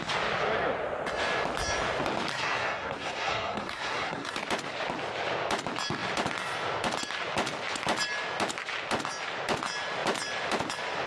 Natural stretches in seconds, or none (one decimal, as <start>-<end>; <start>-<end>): 0.0-2.3; 4.3-11.1